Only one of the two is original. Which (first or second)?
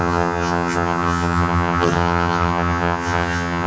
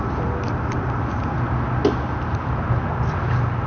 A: second